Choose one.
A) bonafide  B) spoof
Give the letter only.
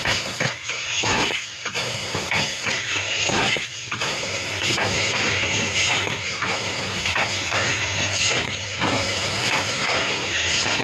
B